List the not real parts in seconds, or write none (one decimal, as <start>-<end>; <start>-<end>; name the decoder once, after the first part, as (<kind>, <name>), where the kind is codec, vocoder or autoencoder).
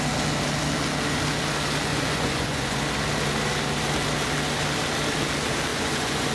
1.9-2.8 (vocoder, Vocos); 5.7-6.3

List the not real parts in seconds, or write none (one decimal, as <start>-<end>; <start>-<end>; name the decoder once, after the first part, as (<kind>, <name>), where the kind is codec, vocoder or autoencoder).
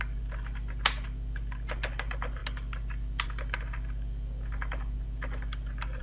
none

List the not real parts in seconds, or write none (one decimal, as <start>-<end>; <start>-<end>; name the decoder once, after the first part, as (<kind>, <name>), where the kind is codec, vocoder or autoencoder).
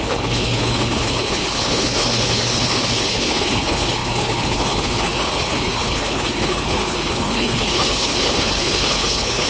0.0-9.5 (codec, HILCodec)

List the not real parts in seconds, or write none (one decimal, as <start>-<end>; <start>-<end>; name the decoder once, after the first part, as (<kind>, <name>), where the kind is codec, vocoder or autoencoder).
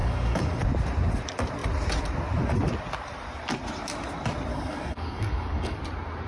0.0-0.6 (codec, DAC); 4.5-5.8